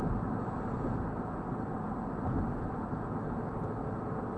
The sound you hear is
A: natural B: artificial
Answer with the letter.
A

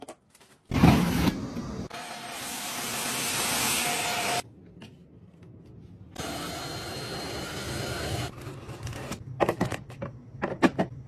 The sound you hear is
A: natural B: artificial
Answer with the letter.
A